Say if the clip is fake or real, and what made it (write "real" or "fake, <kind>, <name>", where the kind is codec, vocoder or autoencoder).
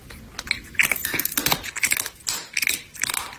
real